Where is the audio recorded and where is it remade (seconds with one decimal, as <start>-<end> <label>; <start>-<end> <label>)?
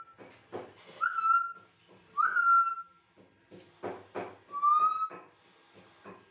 0.0-6.3 recorded